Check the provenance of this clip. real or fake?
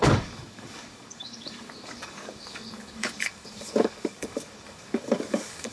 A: fake